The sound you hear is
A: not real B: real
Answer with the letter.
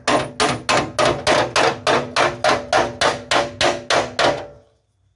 B